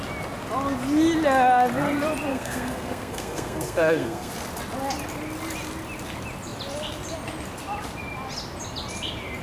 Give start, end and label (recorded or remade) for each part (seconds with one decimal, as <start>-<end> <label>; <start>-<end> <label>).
0.0-2.3 recorded; 2.3-4.3 remade; 4.3-9.4 recorded